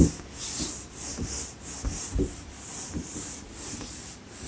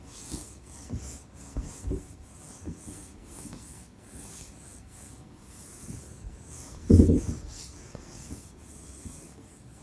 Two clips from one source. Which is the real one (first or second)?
first